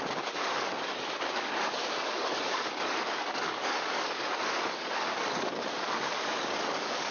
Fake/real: fake